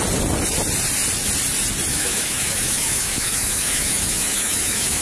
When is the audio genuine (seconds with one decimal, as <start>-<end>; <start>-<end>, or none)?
0.0-1.9